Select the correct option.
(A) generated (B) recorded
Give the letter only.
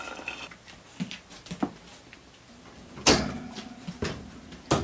B